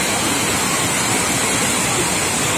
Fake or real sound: real